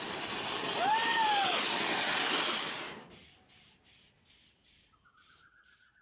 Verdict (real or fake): real